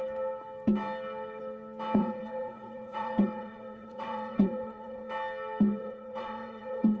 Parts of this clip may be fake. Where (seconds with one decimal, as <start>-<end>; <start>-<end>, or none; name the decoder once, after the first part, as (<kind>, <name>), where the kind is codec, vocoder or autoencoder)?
2.0-5.1 (vocoder, WaveNeXt); 5.8-7.0

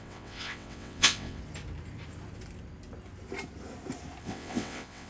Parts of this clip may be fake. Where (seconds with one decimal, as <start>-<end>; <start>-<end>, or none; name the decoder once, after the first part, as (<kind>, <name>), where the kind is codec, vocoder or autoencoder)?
0.0-1.4 (vocoder, WaveNeXt); 4.2-5.1

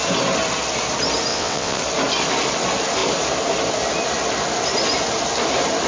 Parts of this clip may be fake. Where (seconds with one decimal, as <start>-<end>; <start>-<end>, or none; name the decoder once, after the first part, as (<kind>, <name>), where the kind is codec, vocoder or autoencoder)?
1.3-1.8 (vocoder, WaveNeXt)

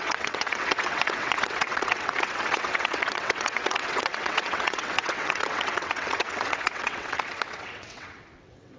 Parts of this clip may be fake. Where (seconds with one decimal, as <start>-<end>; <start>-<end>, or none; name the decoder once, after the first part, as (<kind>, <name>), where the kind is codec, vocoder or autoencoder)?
0.0-8.8 (vocoder, WaveNeXt)

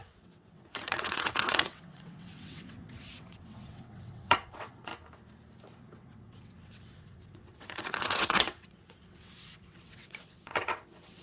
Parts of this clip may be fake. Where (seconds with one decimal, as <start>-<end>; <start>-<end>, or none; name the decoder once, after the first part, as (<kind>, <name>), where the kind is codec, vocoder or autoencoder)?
0.0-4.9 (vocoder, WaveNeXt); 5.8-11.2

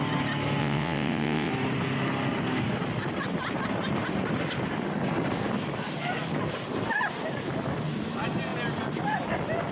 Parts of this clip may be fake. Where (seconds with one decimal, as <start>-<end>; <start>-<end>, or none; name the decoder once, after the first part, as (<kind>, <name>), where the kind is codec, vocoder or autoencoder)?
0.6-1.5 (vocoder, WaveNeXt)

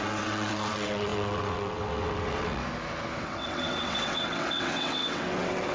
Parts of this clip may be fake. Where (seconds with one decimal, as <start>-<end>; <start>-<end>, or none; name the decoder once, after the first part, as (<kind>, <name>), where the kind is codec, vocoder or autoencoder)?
0.0-2.6 (vocoder, WaveNeXt); 3.2-5.7